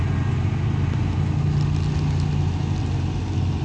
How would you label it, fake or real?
real